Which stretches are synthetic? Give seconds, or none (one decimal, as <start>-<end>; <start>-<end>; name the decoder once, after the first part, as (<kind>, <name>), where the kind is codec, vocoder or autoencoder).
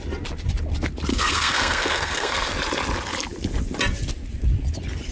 1.1-2.5 (codec, SNAC)